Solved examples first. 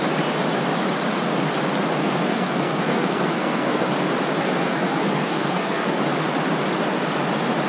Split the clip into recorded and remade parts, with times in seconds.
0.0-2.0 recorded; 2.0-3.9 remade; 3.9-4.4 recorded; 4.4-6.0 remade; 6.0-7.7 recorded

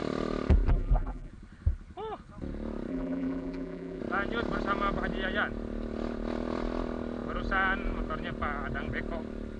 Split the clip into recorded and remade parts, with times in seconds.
0.0-0.7 recorded; 0.7-1.3 remade; 1.3-2.9 recorded; 2.9-4.0 remade; 4.0-9.6 recorded

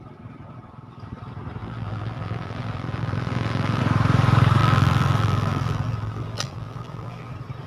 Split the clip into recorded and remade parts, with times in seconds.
0.0-1.6 recorded; 1.6-3.8 remade; 3.8-4.6 recorded; 4.6-7.3 remade; 7.3-7.7 recorded

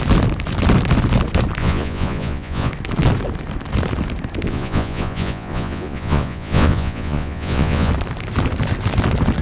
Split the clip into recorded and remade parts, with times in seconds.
0.0-1.6 recorded; 1.6-2.7 remade; 2.7-4.5 recorded; 4.5-7.9 remade; 7.9-9.4 recorded

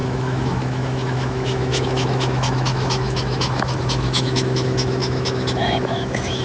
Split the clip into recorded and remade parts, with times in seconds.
0.0-6.4 remade

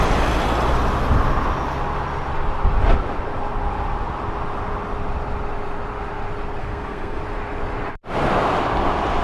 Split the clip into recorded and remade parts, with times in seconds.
0.0-6.6 recorded; 6.6-7.2 remade; 7.2-9.2 recorded

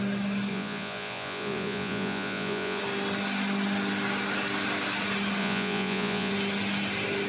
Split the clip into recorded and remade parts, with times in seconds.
0.0-0.5 recorded; 0.5-2.8 remade; 2.8-5.4 recorded; 5.4-6.3 remade; 6.3-7.3 recorded